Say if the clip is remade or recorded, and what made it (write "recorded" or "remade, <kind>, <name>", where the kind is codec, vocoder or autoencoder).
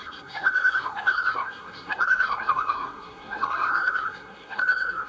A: remade, codec, SNAC